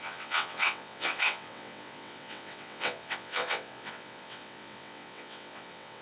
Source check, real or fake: fake